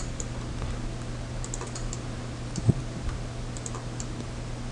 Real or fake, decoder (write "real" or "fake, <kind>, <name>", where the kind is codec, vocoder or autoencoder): real